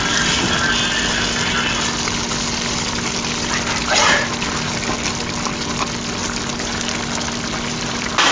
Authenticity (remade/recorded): recorded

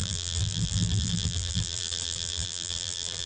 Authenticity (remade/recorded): remade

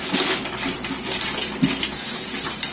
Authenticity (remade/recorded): recorded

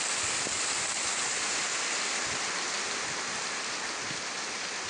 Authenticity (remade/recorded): recorded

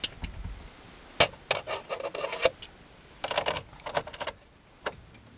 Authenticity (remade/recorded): recorded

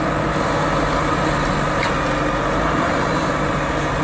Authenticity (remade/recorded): recorded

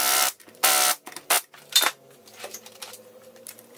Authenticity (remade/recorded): remade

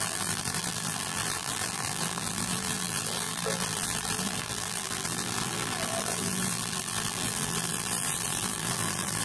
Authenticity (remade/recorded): remade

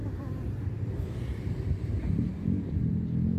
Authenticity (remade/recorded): remade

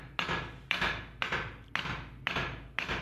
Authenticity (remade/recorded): recorded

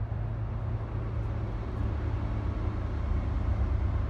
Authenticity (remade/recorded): recorded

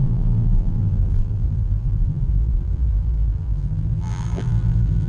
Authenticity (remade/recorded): remade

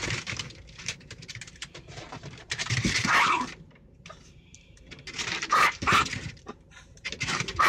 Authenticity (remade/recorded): remade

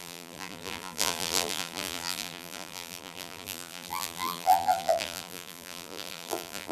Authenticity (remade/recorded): remade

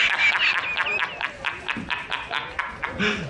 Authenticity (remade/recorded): recorded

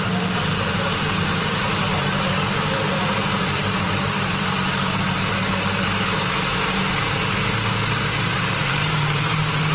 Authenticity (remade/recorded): remade